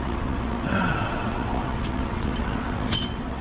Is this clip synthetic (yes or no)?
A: yes